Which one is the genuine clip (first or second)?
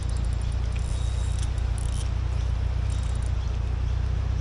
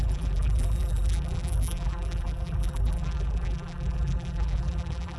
first